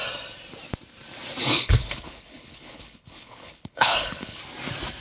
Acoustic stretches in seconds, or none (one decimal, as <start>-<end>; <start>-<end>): 0.0-1.4; 4.4-5.0